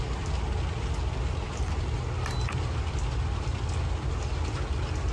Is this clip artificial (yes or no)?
no